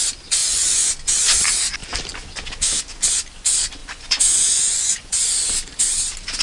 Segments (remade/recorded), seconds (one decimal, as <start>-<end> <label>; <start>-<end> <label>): 0.0-0.4 recorded; 0.4-0.9 remade; 0.9-3.8 recorded; 3.8-5.2 remade; 5.2-6.4 recorded